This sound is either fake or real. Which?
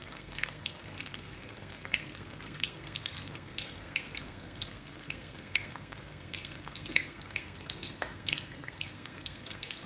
fake